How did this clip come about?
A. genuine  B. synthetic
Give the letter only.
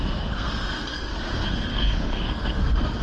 B